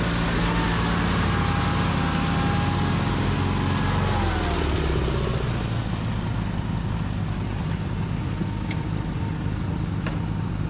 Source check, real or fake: real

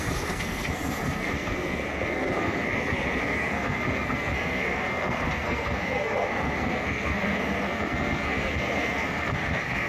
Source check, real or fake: fake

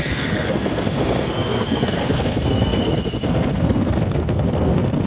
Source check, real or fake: fake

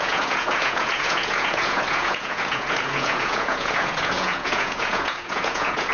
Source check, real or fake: fake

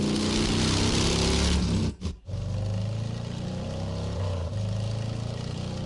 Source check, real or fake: real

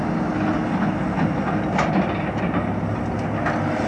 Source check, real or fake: real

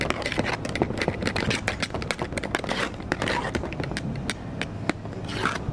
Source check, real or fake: real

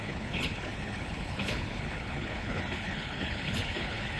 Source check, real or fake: fake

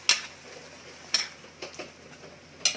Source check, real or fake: real